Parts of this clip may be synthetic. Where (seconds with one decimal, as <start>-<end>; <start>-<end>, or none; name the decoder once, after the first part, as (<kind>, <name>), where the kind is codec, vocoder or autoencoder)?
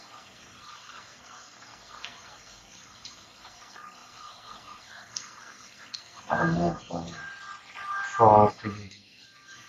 0.0-7.2 (codec, SNAC); 8.5-9.7